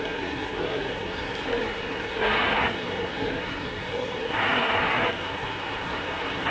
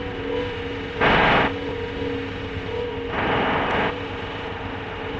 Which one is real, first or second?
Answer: second